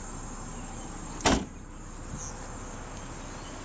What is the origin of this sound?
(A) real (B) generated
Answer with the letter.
A